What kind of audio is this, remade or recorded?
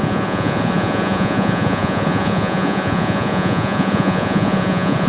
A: remade